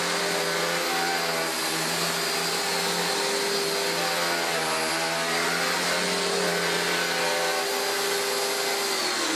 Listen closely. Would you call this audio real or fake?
real